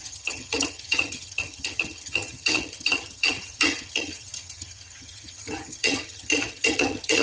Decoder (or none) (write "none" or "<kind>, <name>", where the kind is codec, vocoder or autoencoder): vocoder, HiFi-GAN